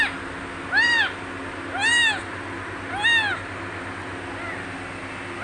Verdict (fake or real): real